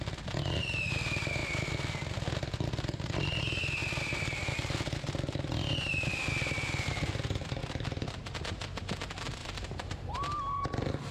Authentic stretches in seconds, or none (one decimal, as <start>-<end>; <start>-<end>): 0.0-7.6; 8.2-9.4; 10.1-11.1